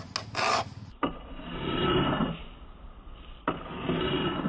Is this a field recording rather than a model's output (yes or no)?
yes